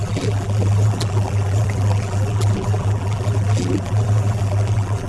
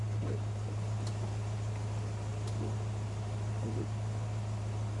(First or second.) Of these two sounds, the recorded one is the second